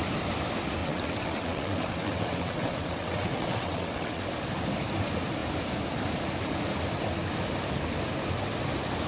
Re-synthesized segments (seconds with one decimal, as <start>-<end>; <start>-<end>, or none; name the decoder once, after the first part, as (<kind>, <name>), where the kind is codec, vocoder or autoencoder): 0.8-4.2 (vocoder, WaveNeXt)